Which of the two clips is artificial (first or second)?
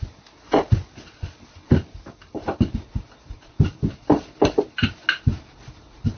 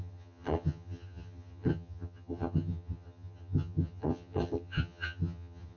second